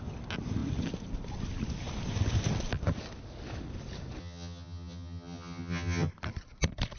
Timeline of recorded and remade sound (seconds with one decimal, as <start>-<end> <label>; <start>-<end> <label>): 0.0-4.2 recorded; 4.2-6.1 remade; 6.1-7.0 recorded